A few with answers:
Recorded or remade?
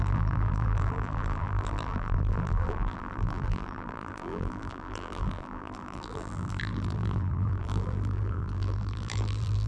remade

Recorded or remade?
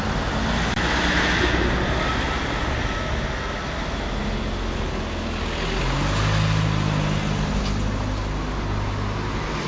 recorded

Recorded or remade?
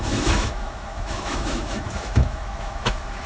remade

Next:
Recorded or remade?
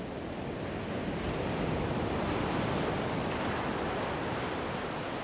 recorded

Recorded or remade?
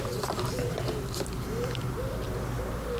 recorded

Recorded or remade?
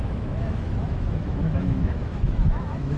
remade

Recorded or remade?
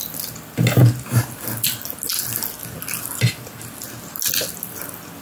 recorded